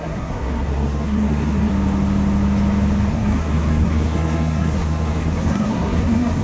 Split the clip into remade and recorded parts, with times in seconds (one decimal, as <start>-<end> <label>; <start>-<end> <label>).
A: 0.0-1.7 remade; 1.7-3.1 recorded; 3.1-6.4 remade